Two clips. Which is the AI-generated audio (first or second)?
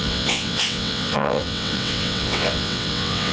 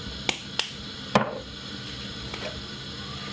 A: first